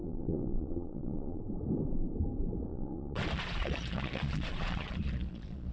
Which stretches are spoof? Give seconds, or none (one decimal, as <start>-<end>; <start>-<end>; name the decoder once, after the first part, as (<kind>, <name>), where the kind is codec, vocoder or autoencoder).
0.0-1.4 (vocoder, Vocos); 2.7-5.7